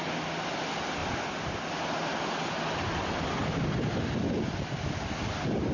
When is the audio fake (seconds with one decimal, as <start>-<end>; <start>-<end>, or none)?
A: none